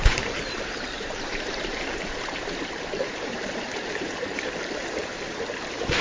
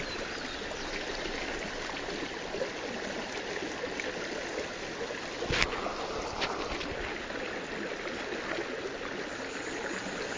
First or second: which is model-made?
first